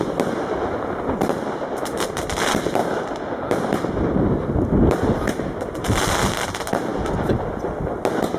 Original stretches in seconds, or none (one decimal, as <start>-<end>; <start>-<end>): 0.0-8.4